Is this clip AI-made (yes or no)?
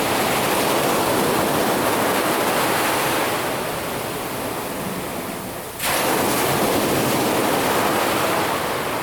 no